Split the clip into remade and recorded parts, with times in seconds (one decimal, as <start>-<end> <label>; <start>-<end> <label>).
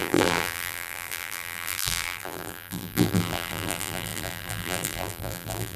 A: 0.0-5.8 remade